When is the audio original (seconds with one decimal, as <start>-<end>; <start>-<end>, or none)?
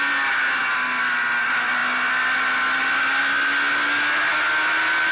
0.0-5.1